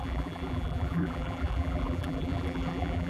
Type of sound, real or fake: fake